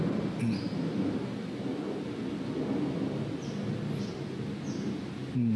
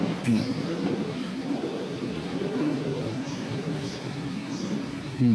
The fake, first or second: second